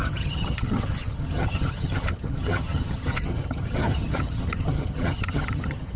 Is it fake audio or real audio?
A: fake